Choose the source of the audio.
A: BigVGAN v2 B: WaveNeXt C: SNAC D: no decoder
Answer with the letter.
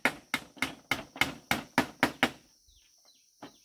D